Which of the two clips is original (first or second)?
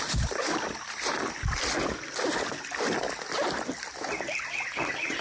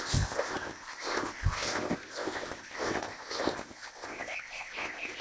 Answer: first